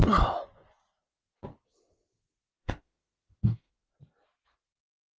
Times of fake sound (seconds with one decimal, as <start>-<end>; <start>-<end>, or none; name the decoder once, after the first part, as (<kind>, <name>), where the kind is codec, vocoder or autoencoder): 2.5-3.7 (autoencoder, DAC-VAE)